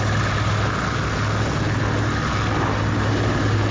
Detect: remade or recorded recorded